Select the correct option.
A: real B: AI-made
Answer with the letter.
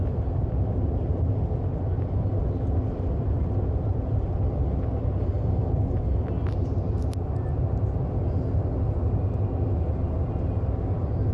A